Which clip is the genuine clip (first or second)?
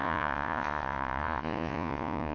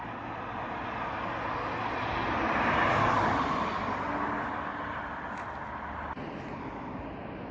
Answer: second